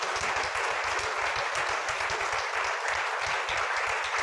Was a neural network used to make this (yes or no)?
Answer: no